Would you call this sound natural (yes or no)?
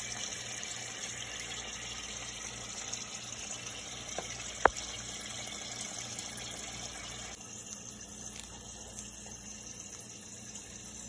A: yes